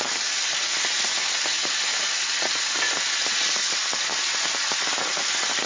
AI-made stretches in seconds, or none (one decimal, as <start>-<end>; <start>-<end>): none